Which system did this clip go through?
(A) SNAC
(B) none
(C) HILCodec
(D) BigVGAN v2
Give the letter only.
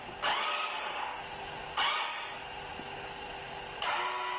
B